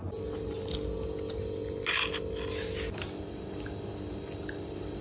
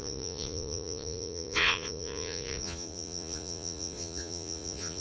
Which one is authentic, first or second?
first